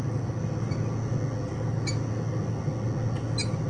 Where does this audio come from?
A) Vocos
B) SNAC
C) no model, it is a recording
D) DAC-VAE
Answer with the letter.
C